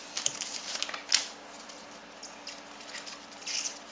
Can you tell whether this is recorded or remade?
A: recorded